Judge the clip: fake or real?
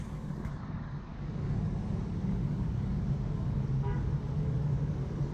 fake